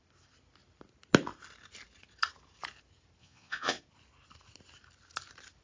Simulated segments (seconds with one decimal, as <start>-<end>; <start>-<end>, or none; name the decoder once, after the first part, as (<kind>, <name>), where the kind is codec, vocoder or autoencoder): 3.2-3.8 (vocoder, Vocos)

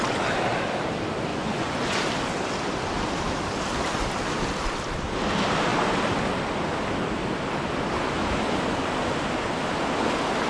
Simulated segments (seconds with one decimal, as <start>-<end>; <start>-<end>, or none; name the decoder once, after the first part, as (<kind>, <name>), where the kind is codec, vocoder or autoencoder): 1.3-2.0 (vocoder, Vocos)

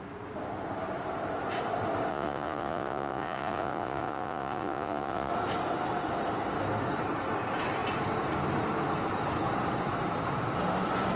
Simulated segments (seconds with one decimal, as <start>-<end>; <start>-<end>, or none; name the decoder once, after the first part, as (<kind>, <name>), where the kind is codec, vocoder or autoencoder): 2.1-5.3 (vocoder, Vocos)

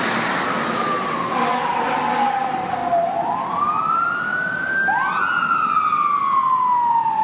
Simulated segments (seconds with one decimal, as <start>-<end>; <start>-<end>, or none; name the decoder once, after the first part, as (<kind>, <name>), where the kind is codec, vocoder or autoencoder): none

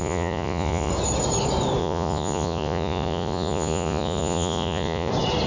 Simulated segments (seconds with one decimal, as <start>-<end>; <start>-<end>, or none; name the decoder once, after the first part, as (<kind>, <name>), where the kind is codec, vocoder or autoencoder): 0.0-0.9 (vocoder, Vocos); 1.8-5.1

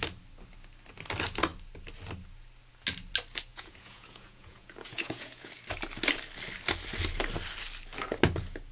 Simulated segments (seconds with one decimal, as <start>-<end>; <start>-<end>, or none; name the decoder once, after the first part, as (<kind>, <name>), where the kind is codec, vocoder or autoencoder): 3.5-5.5 (vocoder, Vocos)